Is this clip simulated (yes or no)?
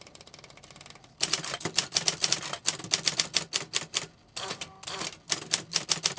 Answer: no